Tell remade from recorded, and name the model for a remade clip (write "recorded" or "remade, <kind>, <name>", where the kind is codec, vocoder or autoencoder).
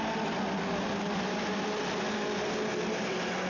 recorded